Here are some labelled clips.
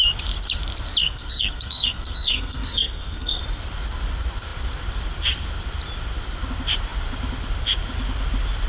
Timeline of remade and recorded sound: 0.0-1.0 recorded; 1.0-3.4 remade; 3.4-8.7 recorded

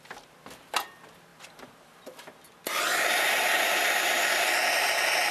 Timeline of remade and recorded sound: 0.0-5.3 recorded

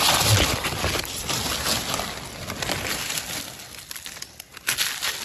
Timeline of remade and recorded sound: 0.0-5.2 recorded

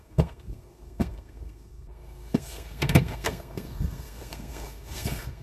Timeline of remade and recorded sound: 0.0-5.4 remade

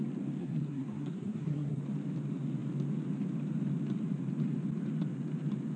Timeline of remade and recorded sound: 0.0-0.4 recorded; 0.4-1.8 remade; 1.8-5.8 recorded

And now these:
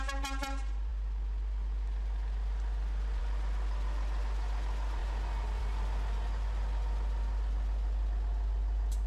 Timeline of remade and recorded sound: 0.0-9.1 recorded